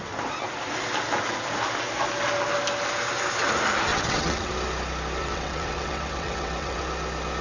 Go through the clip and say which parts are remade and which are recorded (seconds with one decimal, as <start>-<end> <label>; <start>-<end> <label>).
0.0-3.9 recorded; 3.9-4.5 remade; 4.5-5.2 recorded; 5.2-6.8 remade; 6.8-7.4 recorded